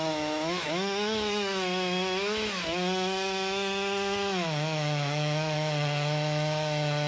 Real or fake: fake